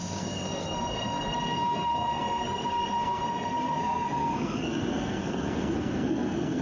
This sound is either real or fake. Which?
fake